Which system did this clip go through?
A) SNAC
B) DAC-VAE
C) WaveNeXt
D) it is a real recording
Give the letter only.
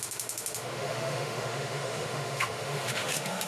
B